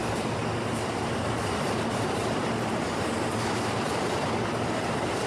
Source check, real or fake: real